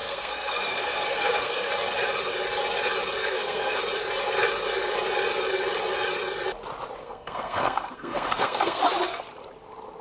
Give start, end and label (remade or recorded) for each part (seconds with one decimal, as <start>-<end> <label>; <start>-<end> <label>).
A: 0.0-1.7 remade; 1.7-3.2 recorded; 3.2-3.8 remade; 3.8-7.0 recorded; 7.0-8.8 remade; 8.8-10.0 recorded